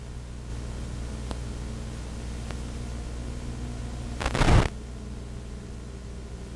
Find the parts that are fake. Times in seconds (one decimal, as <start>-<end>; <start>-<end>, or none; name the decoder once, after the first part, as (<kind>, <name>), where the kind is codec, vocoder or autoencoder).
none